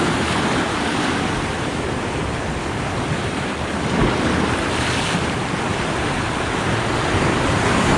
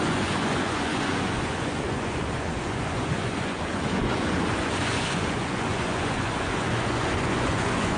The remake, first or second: second